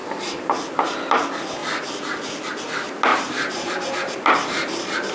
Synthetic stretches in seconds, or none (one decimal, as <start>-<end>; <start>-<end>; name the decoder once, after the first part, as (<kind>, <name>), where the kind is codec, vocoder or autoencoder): 0.0-0.6 (vocoder, BigVGAN v2); 3.1-5.1